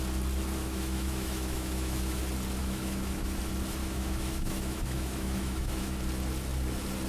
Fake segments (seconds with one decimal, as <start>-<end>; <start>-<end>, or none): 0.6-2.2; 2.6-3.4; 3.8-6.0